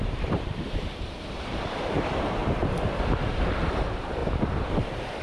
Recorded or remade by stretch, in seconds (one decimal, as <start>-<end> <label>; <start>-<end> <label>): 0.0-2.4 remade; 2.4-3.0 recorded; 3.0-4.2 remade; 4.2-4.7 recorded; 4.7-5.2 remade